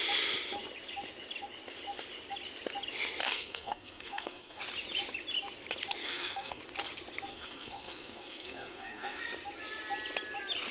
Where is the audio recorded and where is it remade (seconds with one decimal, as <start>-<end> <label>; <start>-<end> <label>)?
0.0-3.2 recorded; 3.2-4.6 remade; 4.6-6.0 recorded; 6.0-6.6 remade; 6.6-7.3 recorded; 7.3-9.2 remade; 9.2-10.7 recorded